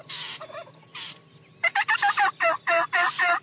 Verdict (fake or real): fake